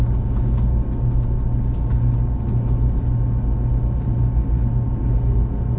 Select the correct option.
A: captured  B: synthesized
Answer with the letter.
A